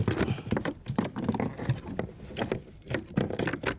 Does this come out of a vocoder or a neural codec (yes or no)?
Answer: no